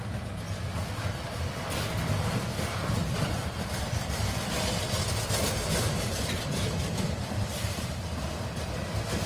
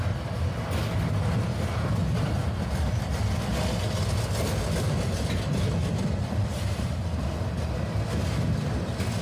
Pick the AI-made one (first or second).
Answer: first